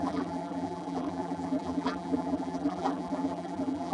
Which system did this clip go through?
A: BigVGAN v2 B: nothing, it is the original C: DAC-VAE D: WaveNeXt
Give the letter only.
A